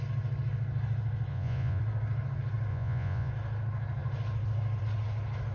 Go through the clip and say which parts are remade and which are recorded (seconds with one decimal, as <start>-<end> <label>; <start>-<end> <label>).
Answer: 0.0-1.3 recorded; 1.3-1.8 remade; 1.8-2.7 recorded; 2.7-3.3 remade; 3.3-5.5 recorded